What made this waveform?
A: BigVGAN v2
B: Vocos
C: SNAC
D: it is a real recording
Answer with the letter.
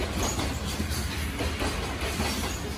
D